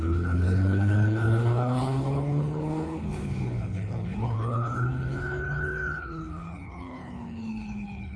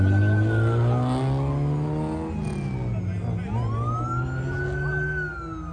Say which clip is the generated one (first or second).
first